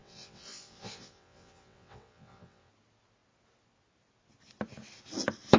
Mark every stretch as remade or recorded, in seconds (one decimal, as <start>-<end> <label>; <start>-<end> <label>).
0.0-2.7 remade; 2.7-5.6 recorded